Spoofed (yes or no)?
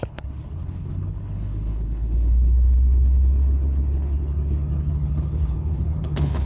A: yes